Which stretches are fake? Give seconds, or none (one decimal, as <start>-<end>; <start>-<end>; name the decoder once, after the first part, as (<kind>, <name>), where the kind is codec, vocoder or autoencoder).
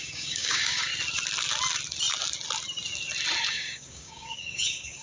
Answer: 0.0-0.9 (codec, DAC); 3.5-5.0